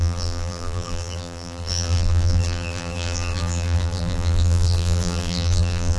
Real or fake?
fake